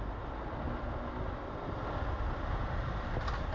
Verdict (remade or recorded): recorded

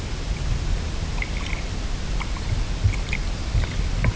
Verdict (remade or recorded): recorded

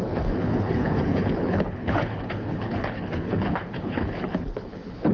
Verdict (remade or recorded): remade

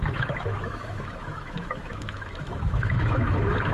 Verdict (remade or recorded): remade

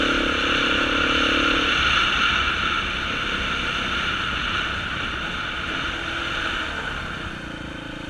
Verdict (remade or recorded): recorded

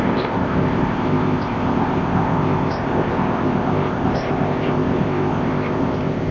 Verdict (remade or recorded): remade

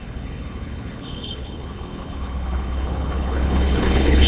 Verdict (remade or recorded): remade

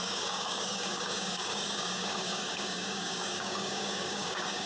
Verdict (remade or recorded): remade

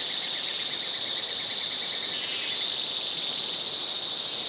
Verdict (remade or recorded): recorded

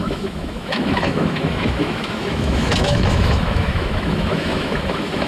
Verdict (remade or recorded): remade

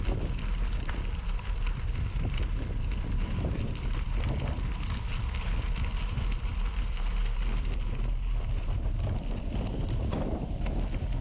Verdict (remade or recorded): remade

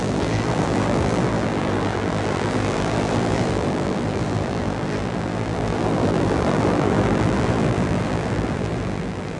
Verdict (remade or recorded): remade